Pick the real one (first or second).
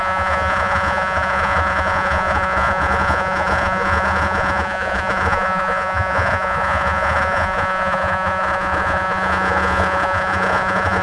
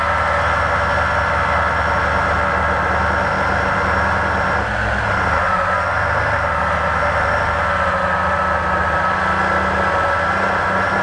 second